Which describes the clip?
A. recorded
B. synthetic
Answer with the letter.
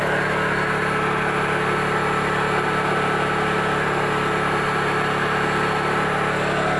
A